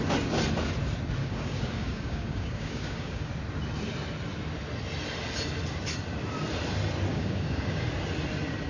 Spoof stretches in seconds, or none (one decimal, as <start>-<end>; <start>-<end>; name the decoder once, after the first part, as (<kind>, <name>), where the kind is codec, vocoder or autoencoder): 1.2-3.3 (codec, DAC); 7.1-7.9